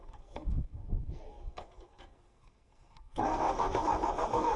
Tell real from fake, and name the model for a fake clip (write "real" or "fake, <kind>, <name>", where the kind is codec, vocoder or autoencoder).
fake, codec, SNAC